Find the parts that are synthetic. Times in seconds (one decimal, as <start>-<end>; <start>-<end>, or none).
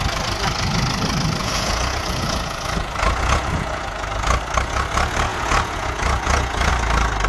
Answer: 1.4-3.8; 5.3-6.7